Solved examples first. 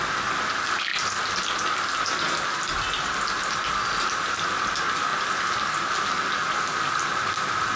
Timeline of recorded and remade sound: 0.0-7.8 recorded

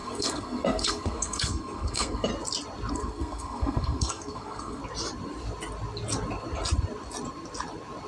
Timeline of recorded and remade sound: 0.0-2.3 remade; 2.3-2.9 recorded; 2.9-4.8 remade; 4.8-8.1 recorded

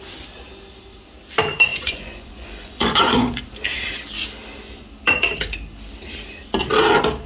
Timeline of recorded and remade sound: 0.0-1.7 recorded; 1.7-3.4 remade; 3.4-7.3 recorded

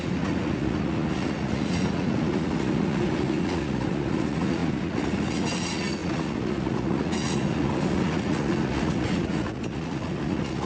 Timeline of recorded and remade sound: 0.0-10.7 remade

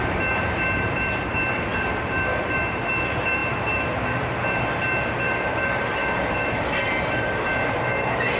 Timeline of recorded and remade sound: 0.0-8.4 remade

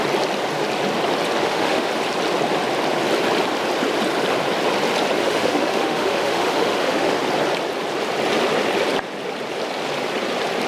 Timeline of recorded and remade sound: 0.0-1.4 recorded; 1.4-1.9 remade; 1.9-5.2 recorded; 5.2-7.2 remade; 7.2-10.7 recorded